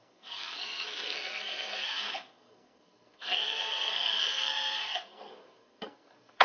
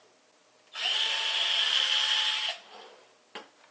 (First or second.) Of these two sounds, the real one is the second